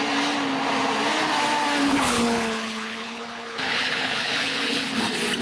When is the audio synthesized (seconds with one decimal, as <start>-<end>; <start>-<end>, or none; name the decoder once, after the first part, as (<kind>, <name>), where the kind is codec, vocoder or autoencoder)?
1.8-5.0 (codec, HILCodec)